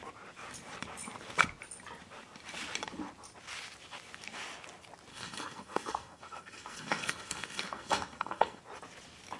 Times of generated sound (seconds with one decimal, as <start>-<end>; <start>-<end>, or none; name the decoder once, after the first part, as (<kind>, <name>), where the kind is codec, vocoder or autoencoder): 5.1-8.6 (codec, SNAC)

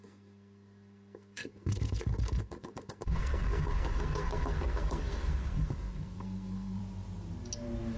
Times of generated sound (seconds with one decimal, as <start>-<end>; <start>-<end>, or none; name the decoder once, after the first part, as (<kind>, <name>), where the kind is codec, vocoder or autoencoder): 0.0-6.8 (codec, SNAC)

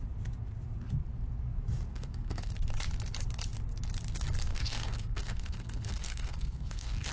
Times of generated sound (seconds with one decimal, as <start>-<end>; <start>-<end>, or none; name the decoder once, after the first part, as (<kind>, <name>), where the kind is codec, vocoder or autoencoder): 1.9-2.5 (codec, SNAC); 4.5-7.1

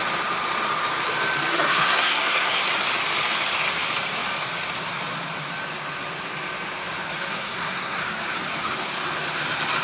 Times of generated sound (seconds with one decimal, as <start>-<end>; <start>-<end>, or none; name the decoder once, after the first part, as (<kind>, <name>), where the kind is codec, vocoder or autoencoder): 1.5-2.6 (codec, SNAC); 7.3-8.0